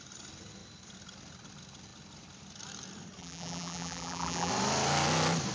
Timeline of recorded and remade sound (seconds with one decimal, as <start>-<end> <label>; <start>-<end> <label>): 0.0-3.2 recorded; 3.2-4.5 remade; 4.5-5.5 recorded